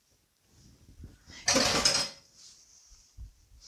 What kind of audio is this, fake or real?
real